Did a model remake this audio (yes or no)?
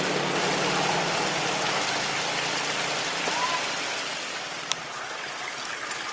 no